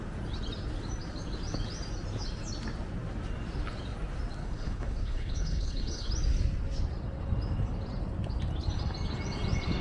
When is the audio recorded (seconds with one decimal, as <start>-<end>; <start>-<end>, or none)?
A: 0.0-4.4; 6.1-9.8